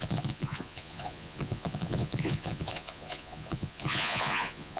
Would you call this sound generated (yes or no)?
yes